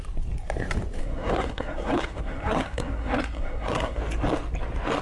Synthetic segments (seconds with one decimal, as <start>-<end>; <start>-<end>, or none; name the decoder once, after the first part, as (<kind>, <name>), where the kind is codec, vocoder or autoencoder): 1.0-4.0 (codec, SNAC)